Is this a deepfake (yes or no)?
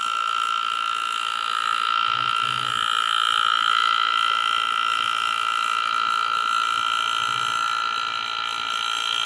no